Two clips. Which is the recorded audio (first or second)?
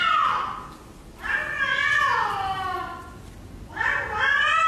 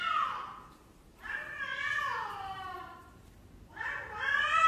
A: first